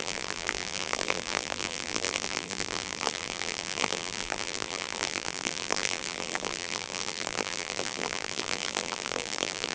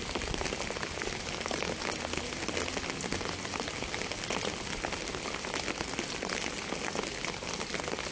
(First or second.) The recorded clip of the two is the second